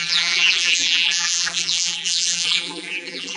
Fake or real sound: fake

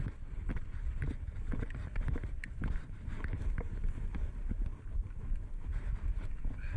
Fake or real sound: fake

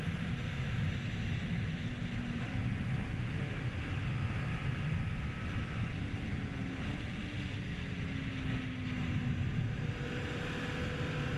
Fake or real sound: real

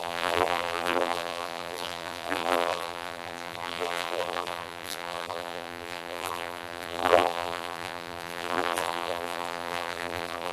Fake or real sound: fake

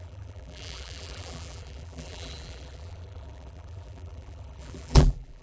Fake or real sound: fake